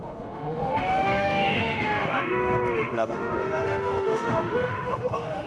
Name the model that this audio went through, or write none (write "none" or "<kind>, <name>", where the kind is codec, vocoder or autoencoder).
autoencoder, DAC-VAE